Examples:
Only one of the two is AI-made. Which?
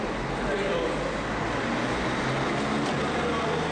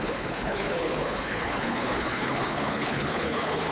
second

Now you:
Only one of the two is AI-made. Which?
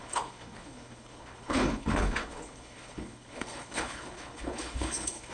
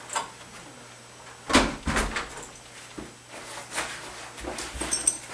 first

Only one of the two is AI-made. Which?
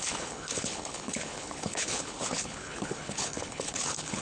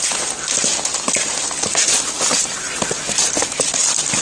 first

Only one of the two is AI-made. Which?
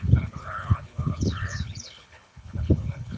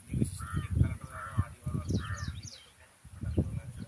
first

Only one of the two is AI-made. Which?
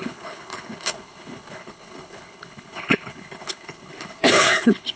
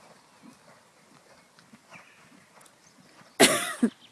first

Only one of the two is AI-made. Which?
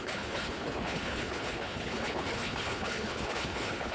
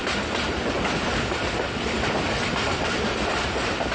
first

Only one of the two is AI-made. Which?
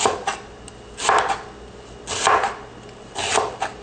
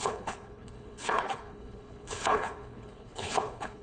second